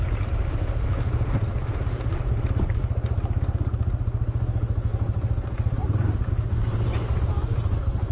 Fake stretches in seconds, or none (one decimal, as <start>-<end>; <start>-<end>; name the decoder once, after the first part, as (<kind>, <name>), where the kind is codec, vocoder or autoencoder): 0.9-2.1 (vocoder, BigVGAN v2); 4.9-6.3